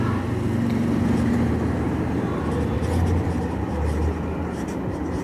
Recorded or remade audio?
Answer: recorded